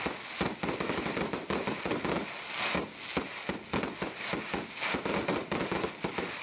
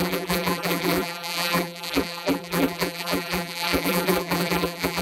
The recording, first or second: first